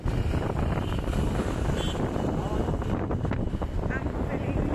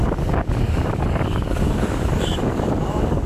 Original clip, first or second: first